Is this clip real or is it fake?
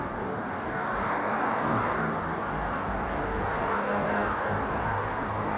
fake